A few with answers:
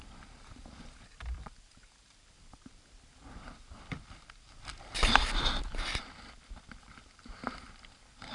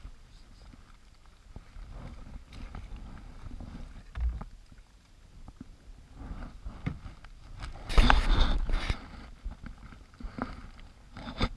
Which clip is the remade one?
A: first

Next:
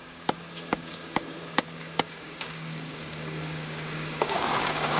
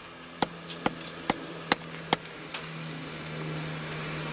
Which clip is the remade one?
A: first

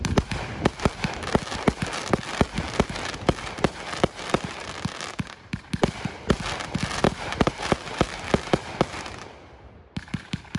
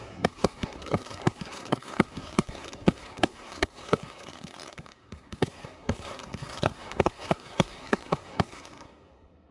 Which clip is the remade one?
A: second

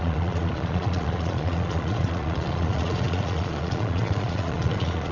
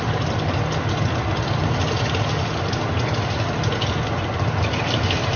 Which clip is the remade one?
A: first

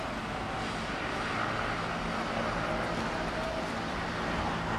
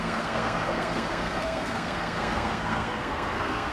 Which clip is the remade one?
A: second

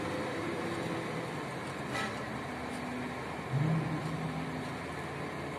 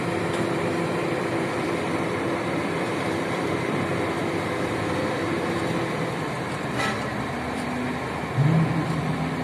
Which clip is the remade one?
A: second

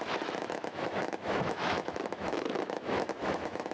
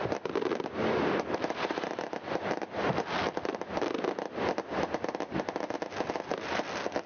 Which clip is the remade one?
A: first